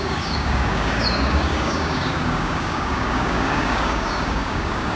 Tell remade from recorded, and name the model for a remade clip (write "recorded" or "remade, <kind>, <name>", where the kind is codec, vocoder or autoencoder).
remade, codec, DAC